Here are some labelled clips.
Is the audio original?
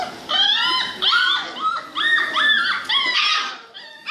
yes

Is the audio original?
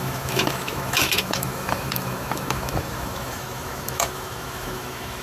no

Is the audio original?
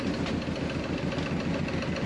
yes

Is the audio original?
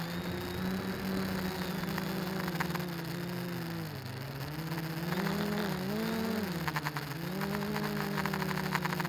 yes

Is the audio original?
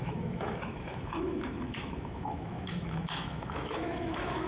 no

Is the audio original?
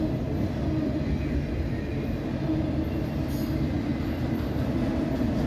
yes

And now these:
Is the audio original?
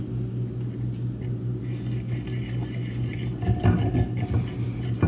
yes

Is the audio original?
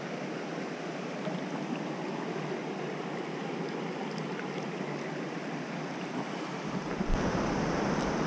yes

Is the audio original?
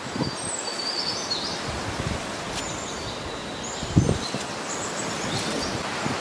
yes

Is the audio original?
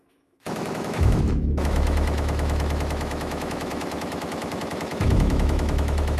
no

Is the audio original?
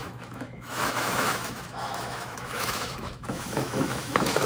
no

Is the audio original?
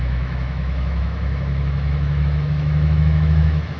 no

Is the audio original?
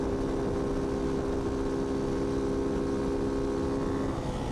yes